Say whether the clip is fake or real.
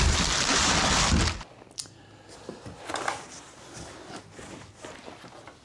real